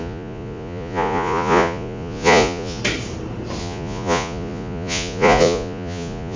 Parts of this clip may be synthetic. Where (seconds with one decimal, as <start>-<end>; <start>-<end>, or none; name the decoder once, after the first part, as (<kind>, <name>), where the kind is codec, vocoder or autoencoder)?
0.0-2.8 (vocoder, Vocos); 3.6-6.4